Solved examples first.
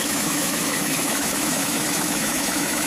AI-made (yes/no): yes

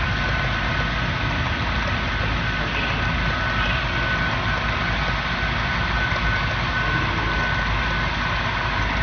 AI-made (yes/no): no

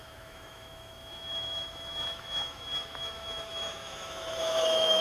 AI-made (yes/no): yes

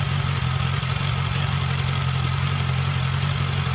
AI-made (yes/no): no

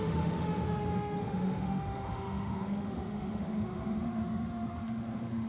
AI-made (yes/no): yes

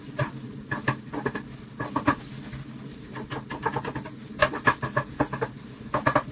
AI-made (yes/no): no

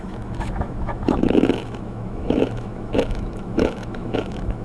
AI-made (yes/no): yes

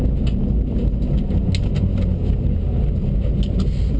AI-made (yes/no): no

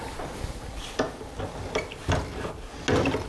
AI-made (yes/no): no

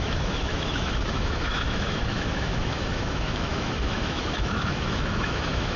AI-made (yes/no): yes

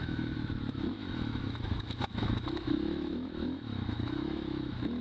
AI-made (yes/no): yes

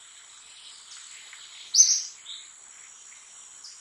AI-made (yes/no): no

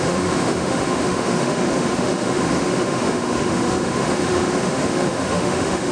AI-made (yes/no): yes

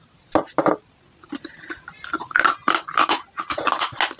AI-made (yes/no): no